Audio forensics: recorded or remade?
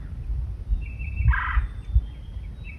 recorded